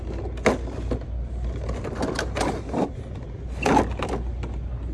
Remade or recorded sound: recorded